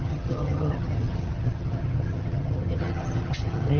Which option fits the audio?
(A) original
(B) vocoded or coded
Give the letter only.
B